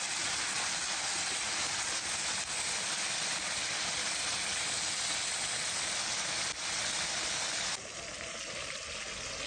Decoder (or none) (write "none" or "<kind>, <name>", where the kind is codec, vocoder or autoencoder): none